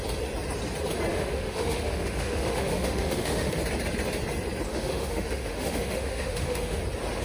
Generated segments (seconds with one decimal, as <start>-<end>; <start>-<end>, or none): 1.1-3.6; 4.7-6.8